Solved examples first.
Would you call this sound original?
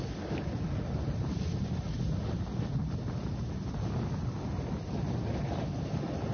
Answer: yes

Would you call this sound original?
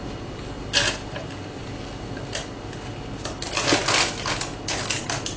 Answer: yes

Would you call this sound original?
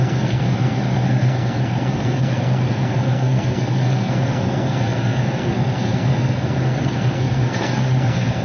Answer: no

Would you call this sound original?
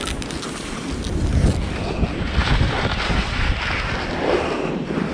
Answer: yes